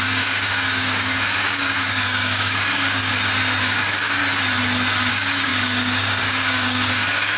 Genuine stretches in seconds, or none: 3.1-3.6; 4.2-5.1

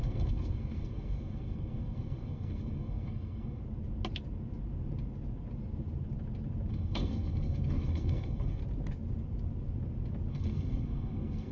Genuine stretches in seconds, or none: 3.6-6.7; 8.6-10.3

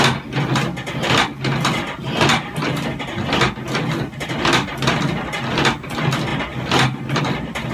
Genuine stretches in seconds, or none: 0.0-7.7

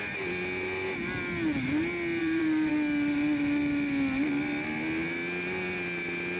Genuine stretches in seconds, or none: 0.0-2.2; 2.7-6.4

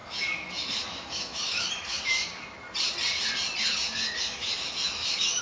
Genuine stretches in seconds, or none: 2.2-4.2

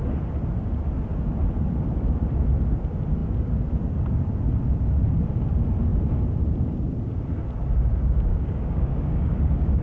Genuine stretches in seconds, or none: 0.0-8.3